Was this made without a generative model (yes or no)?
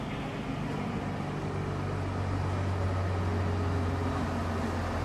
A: yes